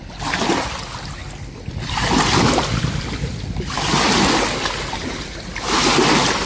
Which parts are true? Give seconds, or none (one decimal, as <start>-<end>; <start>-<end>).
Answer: 0.0-6.5